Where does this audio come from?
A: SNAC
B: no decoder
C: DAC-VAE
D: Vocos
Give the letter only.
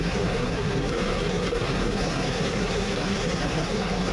A